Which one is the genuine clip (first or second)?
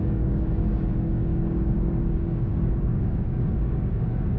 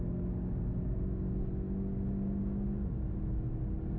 second